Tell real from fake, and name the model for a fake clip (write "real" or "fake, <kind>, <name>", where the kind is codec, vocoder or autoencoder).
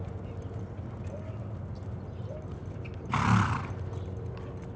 real